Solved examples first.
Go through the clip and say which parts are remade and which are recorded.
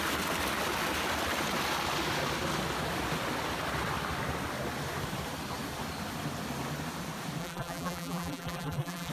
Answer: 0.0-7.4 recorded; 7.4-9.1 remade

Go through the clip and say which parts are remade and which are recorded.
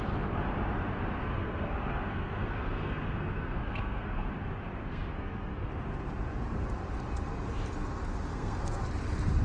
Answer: 0.0-1.2 recorded; 1.2-4.3 remade; 4.3-4.8 recorded; 4.8-5.7 remade; 5.7-8.3 recorded; 8.3-8.8 remade; 8.8-9.4 recorded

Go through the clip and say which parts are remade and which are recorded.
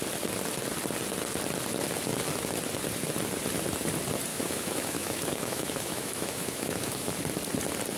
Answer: 0.0-4.3 recorded; 4.3-7.2 remade; 7.2-8.0 recorded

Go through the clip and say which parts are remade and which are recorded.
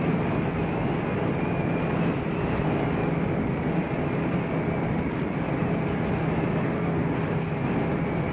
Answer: 0.0-8.3 recorded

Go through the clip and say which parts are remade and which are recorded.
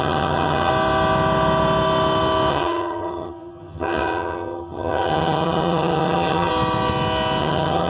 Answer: 0.0-0.7 remade; 0.7-2.5 recorded; 2.5-6.5 remade; 6.5-7.4 recorded; 7.4-7.9 remade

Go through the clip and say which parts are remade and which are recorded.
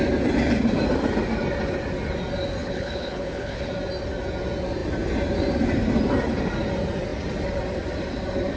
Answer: 0.0-2.6 recorded; 2.6-3.7 remade; 3.7-8.6 recorded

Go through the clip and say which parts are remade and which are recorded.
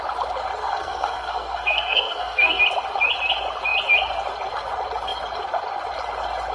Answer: 0.0-0.6 recorded; 0.6-2.6 remade; 2.6-6.5 recorded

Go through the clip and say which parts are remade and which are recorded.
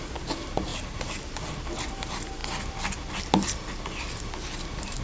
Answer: 0.0-5.0 recorded